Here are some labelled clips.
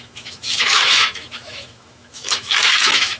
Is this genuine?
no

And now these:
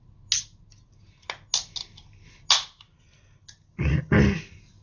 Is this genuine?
yes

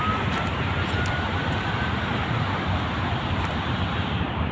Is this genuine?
yes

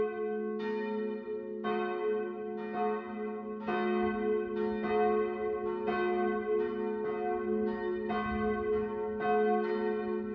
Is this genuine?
yes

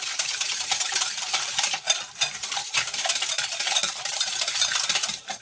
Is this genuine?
no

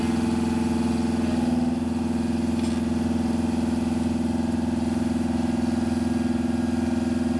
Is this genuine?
yes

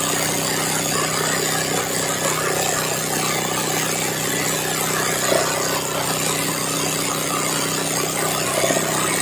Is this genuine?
yes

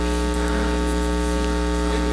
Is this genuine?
yes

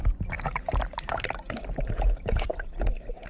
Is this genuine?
no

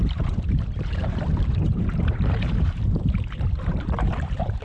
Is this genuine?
no